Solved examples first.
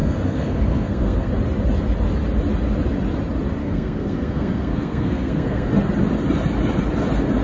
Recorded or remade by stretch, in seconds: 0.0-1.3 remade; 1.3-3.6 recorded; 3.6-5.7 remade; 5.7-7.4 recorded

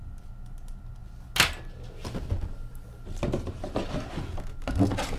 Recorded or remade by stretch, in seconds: 0.0-5.2 recorded

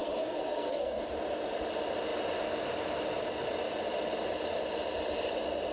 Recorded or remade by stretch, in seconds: 0.0-1.0 remade; 1.0-5.7 recorded

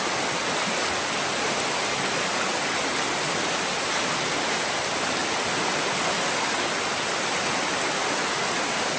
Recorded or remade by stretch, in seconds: 0.0-9.0 recorded

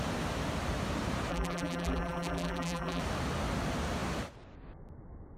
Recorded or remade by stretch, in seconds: 0.0-1.3 recorded; 1.3-3.0 remade; 3.0-5.4 recorded

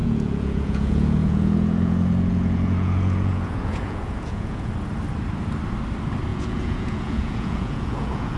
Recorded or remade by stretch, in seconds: 0.0-4.7 remade; 4.7-6.3 recorded; 6.3-8.4 remade